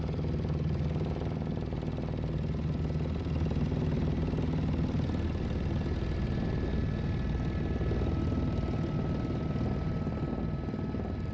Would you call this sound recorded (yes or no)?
yes